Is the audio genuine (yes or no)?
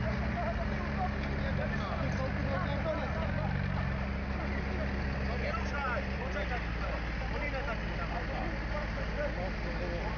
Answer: yes